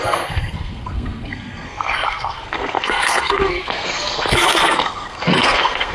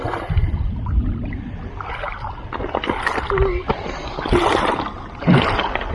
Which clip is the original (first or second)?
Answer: second